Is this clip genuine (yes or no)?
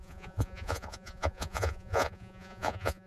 no